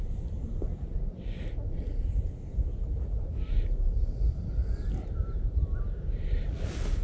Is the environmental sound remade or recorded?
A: recorded